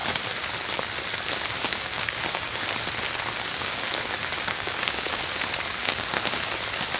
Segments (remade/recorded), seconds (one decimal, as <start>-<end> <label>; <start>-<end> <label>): 0.0-1.7 recorded; 1.7-2.7 remade; 2.7-3.5 recorded; 3.5-5.2 remade; 5.2-5.8 recorded; 5.8-6.4 remade; 6.4-7.0 recorded